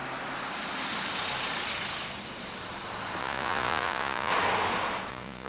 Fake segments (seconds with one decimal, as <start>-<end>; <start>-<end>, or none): 3.2-4.3; 5.1-5.5